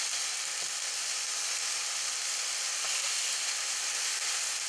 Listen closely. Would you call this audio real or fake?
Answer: real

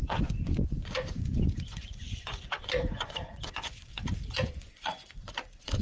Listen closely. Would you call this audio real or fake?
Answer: fake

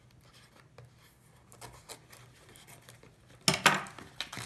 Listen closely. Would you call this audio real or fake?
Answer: real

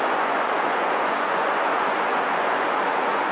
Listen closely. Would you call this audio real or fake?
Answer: fake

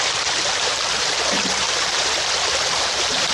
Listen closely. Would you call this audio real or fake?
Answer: fake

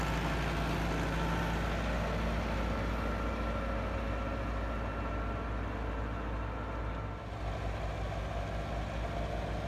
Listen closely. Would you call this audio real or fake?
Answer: real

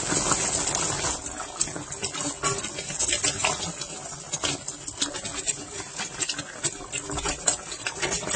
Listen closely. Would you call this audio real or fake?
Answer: real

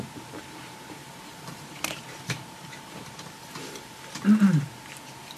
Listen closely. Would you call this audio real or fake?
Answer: fake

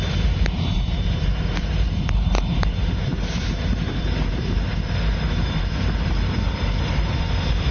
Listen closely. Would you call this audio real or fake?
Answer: fake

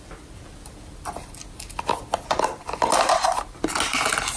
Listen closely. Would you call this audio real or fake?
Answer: real